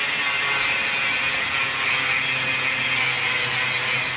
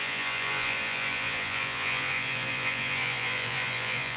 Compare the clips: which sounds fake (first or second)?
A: second